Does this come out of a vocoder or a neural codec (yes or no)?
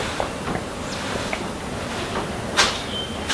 no